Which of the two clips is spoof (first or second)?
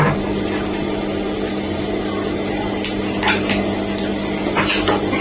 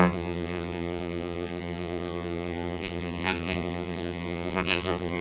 second